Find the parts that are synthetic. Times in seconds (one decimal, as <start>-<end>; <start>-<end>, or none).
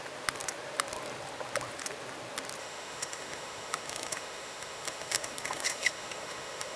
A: 2.6-6.8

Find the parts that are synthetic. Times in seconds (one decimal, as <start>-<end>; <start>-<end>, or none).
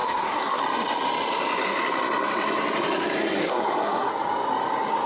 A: 0.0-0.6; 3.4-4.1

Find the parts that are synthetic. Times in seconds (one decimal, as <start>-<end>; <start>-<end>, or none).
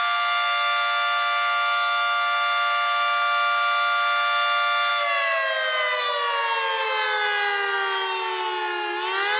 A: none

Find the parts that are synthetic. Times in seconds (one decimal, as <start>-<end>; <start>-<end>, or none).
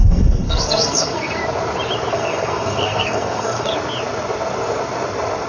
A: 0.0-1.4; 2.1-3.7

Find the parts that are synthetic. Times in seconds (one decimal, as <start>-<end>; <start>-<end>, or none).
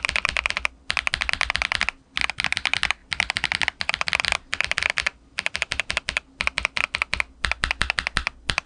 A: none